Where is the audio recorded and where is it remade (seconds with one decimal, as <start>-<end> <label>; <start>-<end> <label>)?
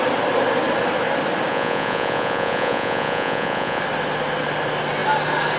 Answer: 0.0-1.5 recorded; 1.5-3.8 remade; 3.8-5.6 recorded